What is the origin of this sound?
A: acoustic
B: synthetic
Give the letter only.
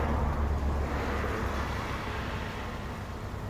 A